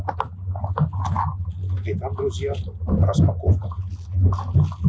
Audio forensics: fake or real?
real